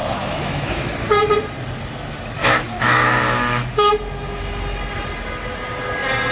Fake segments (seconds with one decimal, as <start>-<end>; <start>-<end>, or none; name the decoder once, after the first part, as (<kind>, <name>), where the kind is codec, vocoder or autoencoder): 0.0-0.9 (autoencoder, DAC-VAE); 2.4-3.9